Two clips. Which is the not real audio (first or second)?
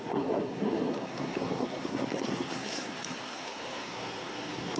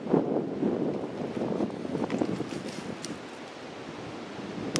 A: first